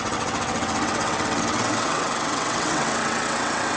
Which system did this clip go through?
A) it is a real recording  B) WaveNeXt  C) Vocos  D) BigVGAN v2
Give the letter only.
B